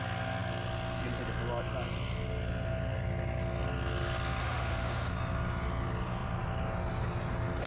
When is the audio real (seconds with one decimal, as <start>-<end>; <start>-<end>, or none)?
0.0-4.4; 5.1-7.7